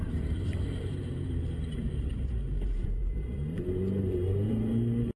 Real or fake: fake